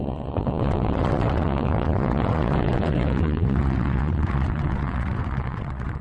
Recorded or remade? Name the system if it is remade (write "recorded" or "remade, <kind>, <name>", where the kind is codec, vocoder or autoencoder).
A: remade, vocoder, WaveNeXt